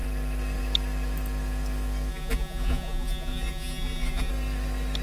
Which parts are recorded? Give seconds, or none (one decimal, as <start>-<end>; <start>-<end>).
0.0-2.1; 4.3-5.0